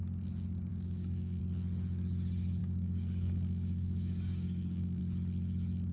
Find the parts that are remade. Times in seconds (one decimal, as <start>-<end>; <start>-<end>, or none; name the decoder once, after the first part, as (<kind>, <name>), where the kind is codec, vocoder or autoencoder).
0.7-1.4 (codec, DAC); 2.6-5.0